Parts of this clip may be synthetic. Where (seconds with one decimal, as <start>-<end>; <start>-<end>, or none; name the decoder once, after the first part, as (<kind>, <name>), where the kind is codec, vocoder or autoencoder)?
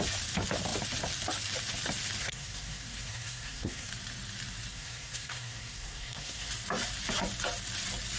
2.2-3.9 (codec, SNAC); 4.7-6.5